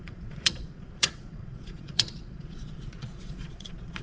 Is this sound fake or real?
fake